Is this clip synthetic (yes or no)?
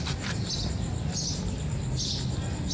no